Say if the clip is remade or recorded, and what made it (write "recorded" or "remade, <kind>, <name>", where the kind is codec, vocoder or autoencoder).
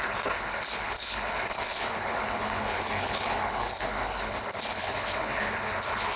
remade, codec, HILCodec